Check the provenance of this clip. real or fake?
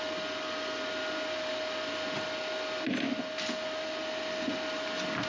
real